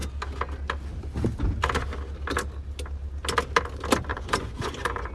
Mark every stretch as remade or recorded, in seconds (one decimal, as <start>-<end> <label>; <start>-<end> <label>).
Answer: 0.0-4.1 recorded; 4.1-5.1 remade